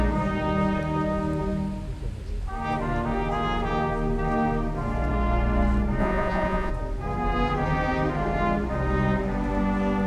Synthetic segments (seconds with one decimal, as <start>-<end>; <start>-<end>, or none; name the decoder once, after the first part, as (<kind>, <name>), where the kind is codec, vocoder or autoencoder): 6.0-6.7 (vocoder, Vocos)